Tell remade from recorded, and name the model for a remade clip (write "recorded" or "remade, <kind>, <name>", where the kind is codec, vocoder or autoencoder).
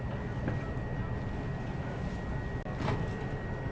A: recorded